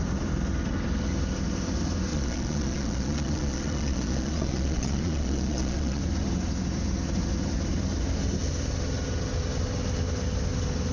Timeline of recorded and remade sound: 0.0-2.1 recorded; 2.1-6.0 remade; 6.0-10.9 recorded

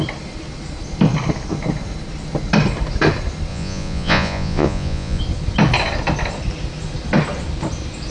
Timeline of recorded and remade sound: 0.0-3.5 recorded; 3.5-5.2 remade; 5.2-8.1 recorded

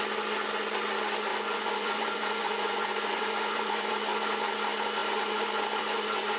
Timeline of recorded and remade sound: 0.0-1.3 recorded; 1.3-3.9 remade; 3.9-6.4 recorded